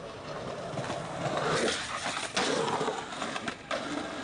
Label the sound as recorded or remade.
recorded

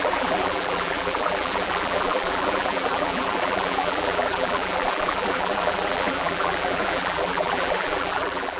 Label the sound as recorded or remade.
remade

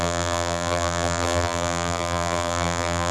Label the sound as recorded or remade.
remade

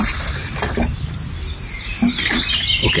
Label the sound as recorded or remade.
recorded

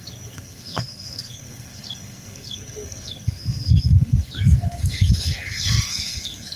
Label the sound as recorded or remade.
remade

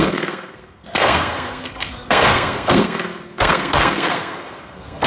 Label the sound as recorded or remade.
remade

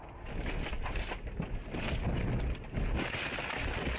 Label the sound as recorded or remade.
recorded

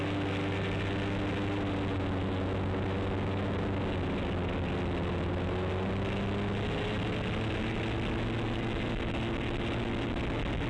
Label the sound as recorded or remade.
recorded